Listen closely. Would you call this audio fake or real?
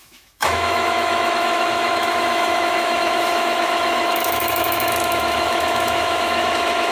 fake